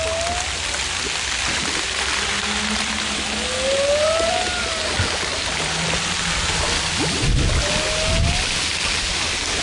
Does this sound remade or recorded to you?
recorded